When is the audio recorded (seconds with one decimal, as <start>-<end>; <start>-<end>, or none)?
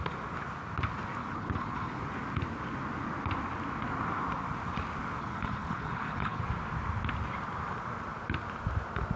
0.0-1.2; 2.0-5.2; 6.4-9.2